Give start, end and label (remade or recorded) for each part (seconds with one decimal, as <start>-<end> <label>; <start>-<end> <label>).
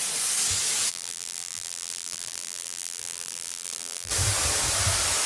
0.0-0.9 recorded; 0.9-4.1 remade; 4.1-5.3 recorded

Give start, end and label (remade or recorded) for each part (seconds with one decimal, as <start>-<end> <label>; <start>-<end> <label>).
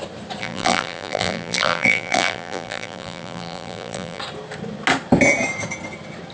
0.0-0.4 recorded; 0.4-4.2 remade; 4.2-6.3 recorded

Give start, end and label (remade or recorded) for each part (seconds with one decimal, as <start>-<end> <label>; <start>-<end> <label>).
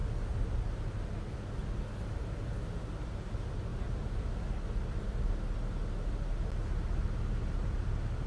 0.0-8.3 recorded